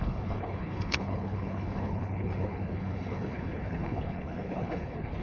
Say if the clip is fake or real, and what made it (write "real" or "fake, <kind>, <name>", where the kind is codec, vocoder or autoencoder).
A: fake, codec, HILCodec